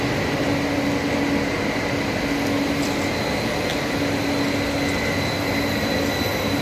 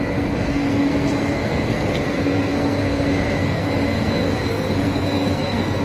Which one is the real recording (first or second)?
first